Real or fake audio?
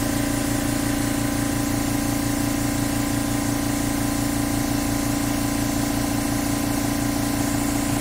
real